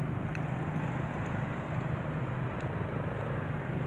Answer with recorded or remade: recorded